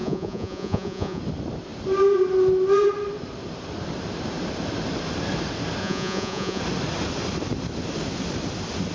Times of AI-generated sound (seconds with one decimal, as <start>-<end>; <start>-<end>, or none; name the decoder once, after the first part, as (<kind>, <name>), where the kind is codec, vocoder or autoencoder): 0.0-1.2 (vocoder, Vocos); 5.8-6.6